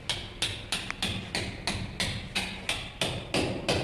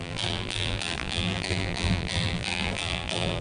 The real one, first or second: first